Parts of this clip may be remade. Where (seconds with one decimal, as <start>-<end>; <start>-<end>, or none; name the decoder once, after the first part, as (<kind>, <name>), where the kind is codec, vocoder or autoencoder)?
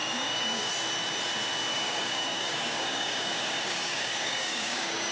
0.0-0.7 (codec, DAC); 1.7-5.1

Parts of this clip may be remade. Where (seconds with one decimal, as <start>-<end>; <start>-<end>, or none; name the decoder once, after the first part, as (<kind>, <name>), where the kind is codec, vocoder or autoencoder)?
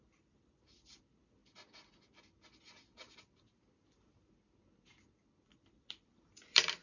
0.0-1.4 (vocoder, BigVGAN v2); 5.4-6.8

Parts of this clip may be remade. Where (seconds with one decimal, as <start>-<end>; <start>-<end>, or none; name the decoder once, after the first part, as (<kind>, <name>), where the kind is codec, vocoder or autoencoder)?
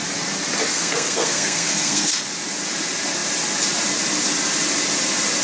0.7-2.2 (codec, SNAC)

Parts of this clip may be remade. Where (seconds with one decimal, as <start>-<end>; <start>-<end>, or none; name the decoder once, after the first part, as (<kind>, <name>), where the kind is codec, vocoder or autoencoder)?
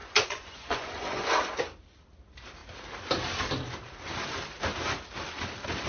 0.0-1.3 (vocoder, Vocos)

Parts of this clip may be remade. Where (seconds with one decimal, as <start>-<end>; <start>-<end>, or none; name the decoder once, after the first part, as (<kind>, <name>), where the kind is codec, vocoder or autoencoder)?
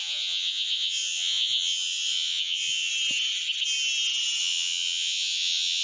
0.0-2.9 (vocoder, Vocos); 4.4-5.8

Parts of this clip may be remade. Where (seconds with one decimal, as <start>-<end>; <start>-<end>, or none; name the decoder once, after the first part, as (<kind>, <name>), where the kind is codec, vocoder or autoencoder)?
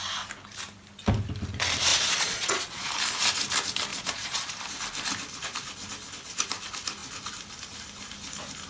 1.9-2.9 (vocoder, Vocos); 3.9-4.5